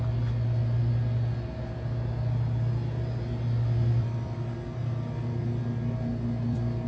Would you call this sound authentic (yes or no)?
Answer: yes